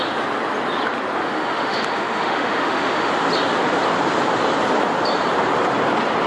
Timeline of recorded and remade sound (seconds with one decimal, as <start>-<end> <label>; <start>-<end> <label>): 0.0-1.2 recorded; 1.2-3.1 remade; 3.1-6.3 recorded